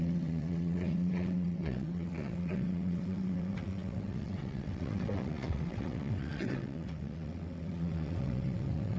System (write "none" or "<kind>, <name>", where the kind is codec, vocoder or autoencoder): vocoder, WaveNeXt